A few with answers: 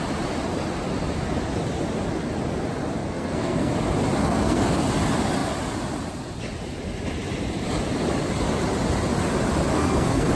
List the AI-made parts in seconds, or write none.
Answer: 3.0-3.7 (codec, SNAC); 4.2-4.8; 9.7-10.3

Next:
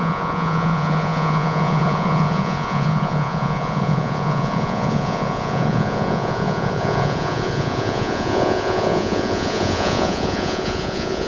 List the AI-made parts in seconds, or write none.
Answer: 0.0-11.3 (vocoder, Vocos)